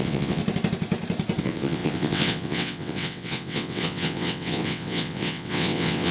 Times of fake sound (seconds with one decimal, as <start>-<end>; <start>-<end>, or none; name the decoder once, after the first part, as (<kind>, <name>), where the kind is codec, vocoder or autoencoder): 0.0-0.4 (vocoder, WaveNeXt); 1.4-6.1